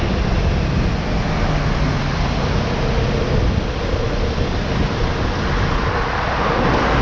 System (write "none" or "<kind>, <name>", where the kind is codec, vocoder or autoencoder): none